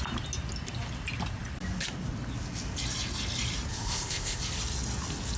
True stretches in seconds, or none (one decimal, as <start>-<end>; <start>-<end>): 0.0-3.7; 4.4-5.4